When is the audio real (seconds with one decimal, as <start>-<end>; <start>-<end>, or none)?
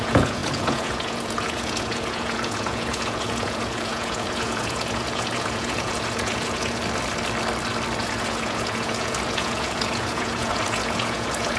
6.8-8.0